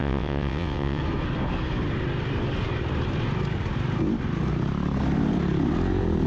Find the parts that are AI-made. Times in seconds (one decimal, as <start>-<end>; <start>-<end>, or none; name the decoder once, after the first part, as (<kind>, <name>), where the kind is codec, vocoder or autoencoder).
0.0-1.0 (vocoder, WaveNeXt)